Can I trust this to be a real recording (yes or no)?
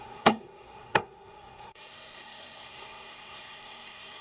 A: no